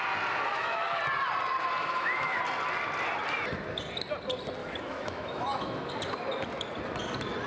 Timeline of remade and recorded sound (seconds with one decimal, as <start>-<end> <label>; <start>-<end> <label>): 0.0-0.5 recorded; 0.5-1.0 remade; 1.0-1.8 recorded; 1.8-2.4 remade; 2.4-4.6 recorded; 4.6-5.9 remade; 5.9-7.5 recorded